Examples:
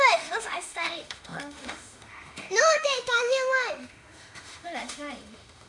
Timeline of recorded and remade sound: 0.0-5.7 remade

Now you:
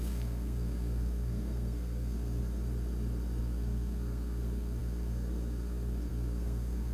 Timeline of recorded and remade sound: 0.0-2.4 remade; 2.4-3.4 recorded; 3.4-6.9 remade